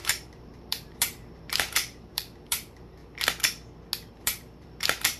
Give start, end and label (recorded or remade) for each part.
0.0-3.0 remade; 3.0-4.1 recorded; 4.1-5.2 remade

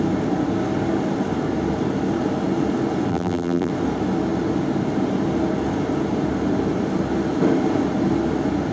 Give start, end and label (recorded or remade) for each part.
0.0-3.1 recorded; 3.1-3.7 remade; 3.7-8.7 recorded

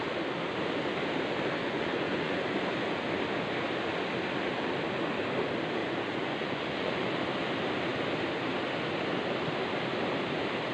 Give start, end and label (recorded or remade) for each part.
0.0-1.6 recorded; 1.6-2.4 remade; 2.4-5.8 recorded; 5.8-7.1 remade; 7.1-10.7 recorded